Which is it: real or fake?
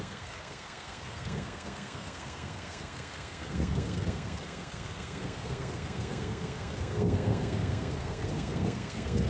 fake